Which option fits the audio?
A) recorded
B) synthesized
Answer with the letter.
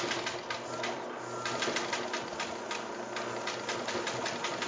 A